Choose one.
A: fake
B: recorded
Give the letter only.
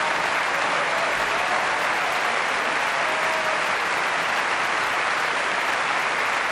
B